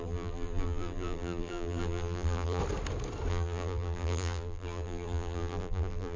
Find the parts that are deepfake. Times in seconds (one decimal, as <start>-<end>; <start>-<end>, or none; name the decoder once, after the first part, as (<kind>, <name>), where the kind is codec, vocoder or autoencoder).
0.0-2.6 (vocoder, BigVGAN v2); 3.3-6.2